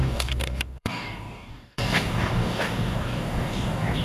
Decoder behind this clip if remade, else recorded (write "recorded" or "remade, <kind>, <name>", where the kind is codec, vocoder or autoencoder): remade, codec, DAC